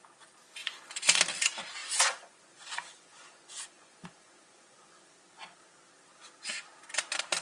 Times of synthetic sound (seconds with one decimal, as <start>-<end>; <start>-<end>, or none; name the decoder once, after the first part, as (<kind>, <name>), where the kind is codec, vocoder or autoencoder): 0.6-1.2 (vocoder, Vocos); 1.8-5.1